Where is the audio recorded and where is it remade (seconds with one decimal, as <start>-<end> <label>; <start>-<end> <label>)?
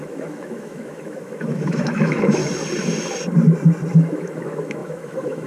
0.0-2.4 remade; 2.4-3.9 recorded; 3.9-5.5 remade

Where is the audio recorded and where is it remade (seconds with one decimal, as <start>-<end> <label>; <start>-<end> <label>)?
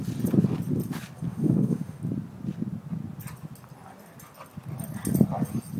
0.0-1.3 recorded; 1.3-2.0 remade; 2.0-5.8 recorded